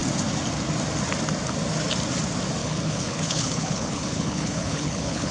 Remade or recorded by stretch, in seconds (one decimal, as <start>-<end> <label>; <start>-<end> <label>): 0.0-2.6 recorded; 2.6-5.3 remade